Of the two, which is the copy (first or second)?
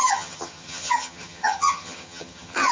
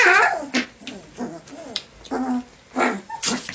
first